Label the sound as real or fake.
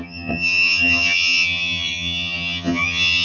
fake